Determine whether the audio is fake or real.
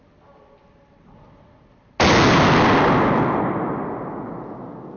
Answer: real